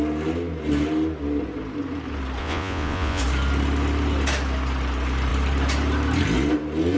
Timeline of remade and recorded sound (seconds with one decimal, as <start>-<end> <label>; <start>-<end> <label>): 0.0-2.4 recorded; 2.4-3.2 remade; 3.2-7.0 recorded

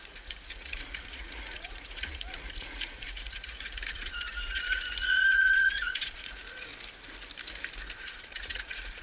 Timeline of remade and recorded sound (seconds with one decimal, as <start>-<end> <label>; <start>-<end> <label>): 0.0-6.7 remade; 6.7-8.0 recorded; 8.0-9.0 remade